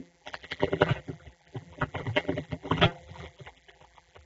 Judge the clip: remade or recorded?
remade